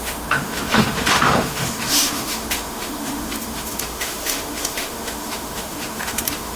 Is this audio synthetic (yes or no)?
yes